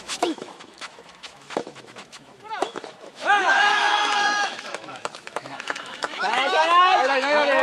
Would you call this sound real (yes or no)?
no